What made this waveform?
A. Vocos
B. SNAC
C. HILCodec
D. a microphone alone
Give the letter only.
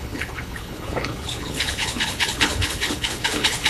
C